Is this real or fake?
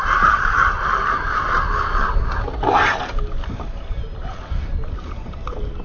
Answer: real